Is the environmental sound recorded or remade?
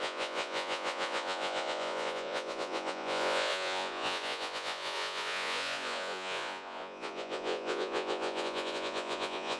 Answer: remade